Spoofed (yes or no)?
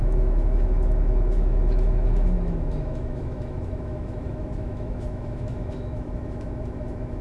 yes